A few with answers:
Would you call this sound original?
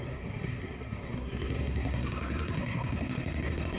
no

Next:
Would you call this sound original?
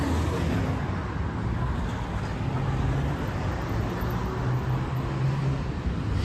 yes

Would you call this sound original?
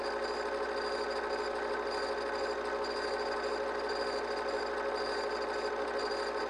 yes